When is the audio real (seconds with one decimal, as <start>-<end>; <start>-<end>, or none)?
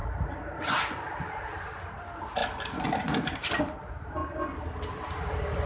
0.0-2.0; 2.4-3.6; 4.2-4.9